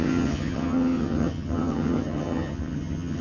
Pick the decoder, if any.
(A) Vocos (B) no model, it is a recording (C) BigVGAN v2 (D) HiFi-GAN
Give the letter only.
D